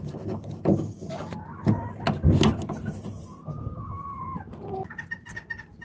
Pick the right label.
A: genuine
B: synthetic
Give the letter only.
A